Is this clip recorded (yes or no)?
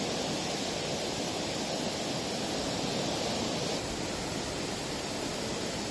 yes